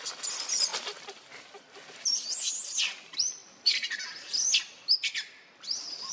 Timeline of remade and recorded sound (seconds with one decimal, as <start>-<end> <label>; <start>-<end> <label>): 0.0-3.4 remade; 3.4-6.1 recorded